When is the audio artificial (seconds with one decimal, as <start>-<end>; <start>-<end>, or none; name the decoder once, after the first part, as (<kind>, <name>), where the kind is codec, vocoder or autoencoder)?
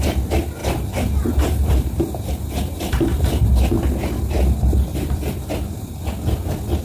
0.6-3.7 (vocoder, BigVGAN v2); 4.9-5.5